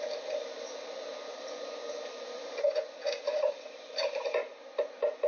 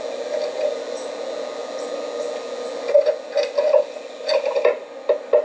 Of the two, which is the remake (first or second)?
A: first